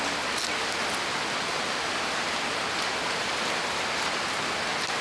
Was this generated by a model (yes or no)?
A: no